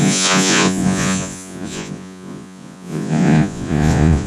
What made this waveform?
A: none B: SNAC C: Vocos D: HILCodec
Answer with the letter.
C